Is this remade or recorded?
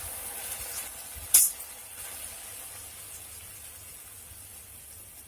recorded